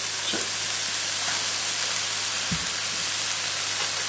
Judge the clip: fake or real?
real